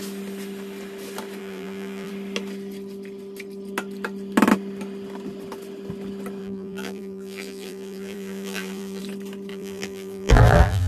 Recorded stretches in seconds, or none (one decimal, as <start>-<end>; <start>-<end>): 0.0-1.4; 2.1-6.4; 9.0-9.5